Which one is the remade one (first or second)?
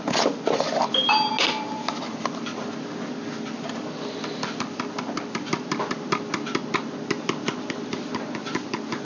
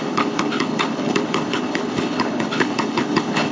second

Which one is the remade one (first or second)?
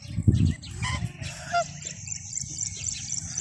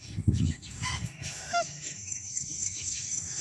second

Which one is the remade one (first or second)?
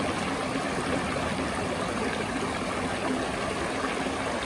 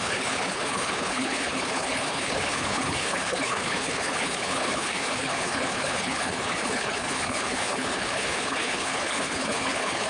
second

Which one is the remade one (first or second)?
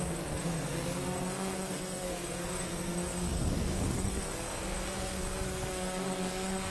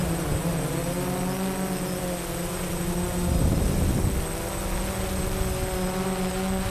first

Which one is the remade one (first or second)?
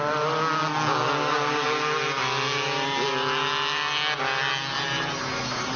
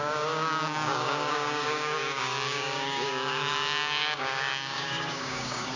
second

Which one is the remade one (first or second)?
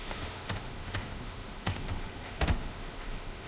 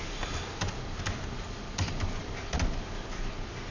first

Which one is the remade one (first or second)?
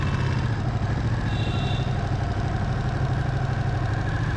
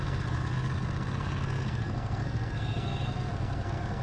second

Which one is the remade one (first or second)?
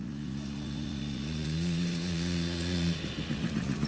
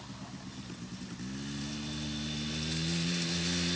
first